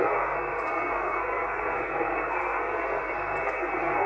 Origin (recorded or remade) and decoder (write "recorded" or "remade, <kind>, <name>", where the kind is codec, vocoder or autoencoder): remade, codec, SNAC